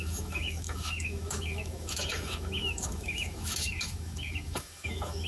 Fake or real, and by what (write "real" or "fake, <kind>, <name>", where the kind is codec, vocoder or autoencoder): fake, autoencoder, DAC-VAE